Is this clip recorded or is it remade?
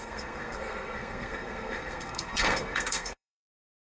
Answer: remade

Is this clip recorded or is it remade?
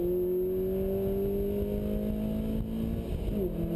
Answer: recorded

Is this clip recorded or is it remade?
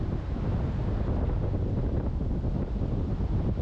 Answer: recorded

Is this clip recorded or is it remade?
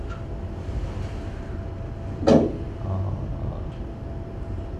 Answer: recorded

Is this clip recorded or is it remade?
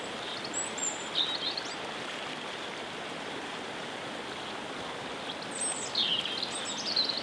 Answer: recorded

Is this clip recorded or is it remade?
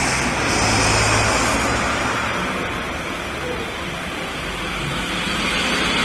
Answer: recorded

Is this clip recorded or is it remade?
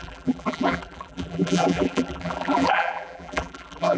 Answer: remade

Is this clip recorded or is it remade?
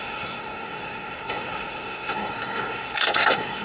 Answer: remade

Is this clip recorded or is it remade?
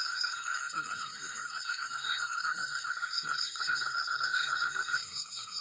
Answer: remade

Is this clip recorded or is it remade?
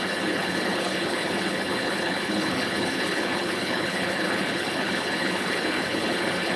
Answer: remade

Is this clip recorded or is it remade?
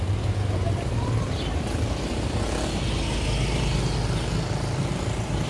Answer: recorded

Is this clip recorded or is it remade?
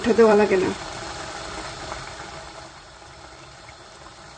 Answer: remade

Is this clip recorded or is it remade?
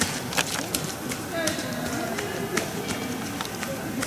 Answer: recorded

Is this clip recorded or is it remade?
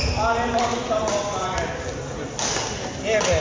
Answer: recorded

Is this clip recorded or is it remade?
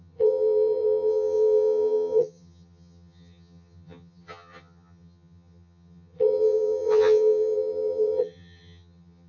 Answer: remade